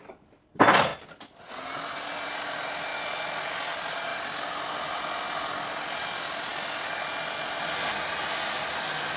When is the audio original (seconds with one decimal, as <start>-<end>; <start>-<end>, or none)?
0.0-2.9; 3.5-4.1; 4.7-9.2